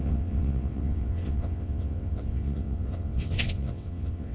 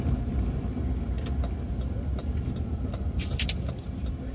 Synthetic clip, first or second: first